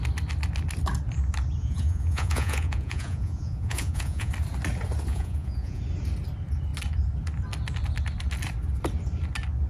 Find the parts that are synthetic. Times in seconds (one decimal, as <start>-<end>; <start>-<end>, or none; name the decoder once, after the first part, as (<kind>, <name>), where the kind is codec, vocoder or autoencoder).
1.6-4.3 (vocoder, Vocos); 5.1-5.8